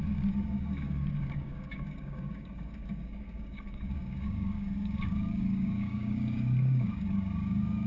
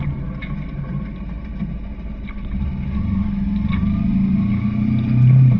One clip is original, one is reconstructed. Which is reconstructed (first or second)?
first